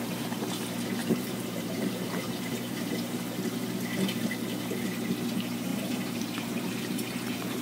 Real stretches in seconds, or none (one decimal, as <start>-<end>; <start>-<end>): 0.0-1.0; 3.2-5.7